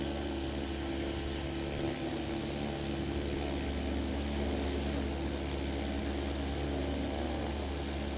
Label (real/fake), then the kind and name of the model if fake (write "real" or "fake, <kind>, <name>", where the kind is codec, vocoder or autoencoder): real